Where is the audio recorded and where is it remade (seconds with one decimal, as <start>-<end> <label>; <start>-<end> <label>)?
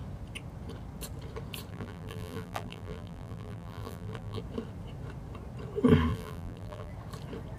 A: 0.0-1.7 recorded; 1.7-4.4 remade; 4.4-6.1 recorded; 6.1-6.9 remade; 6.9-7.6 recorded